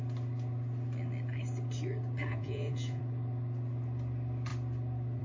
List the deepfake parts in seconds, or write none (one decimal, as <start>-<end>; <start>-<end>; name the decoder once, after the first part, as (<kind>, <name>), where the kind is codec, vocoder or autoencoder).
2.3-3.0 (vocoder, Vocos)